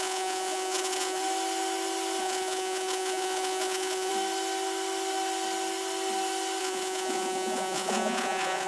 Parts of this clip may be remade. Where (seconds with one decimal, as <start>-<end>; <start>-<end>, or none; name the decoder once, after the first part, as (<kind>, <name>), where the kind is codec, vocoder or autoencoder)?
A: 0.0-1.2 (vocoder, Vocos); 2.2-4.1; 6.6-8.7